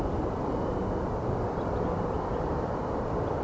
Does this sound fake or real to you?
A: fake